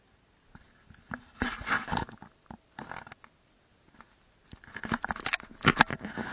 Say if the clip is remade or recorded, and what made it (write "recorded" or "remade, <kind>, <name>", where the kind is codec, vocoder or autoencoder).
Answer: recorded